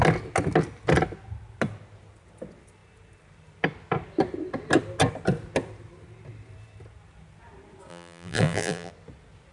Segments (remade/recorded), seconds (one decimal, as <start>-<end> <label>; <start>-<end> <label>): 0.0-7.9 recorded; 7.9-8.9 remade; 8.9-9.5 recorded